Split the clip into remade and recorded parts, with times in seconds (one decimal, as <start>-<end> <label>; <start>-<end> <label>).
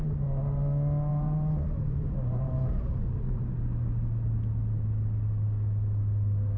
0.0-1.1 recorded; 1.1-3.6 remade; 3.6-6.6 recorded